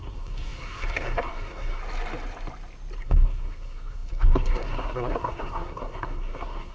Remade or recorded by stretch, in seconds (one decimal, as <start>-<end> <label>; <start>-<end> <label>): 0.0-1.8 remade; 1.8-3.0 recorded; 3.0-6.7 remade